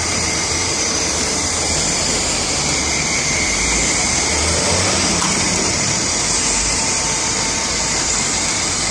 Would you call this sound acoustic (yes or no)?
no